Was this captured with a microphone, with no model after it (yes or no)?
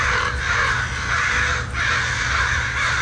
yes